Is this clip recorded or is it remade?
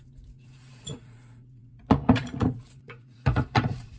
remade